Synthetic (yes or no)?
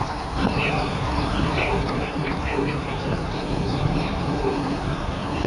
yes